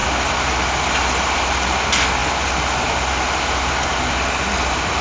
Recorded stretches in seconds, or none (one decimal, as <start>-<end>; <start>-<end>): 0.0-5.0